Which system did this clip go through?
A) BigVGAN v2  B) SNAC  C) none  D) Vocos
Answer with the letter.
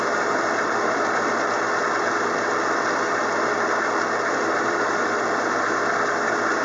A